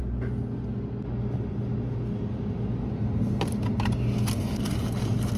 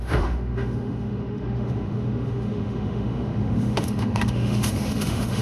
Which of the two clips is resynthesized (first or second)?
second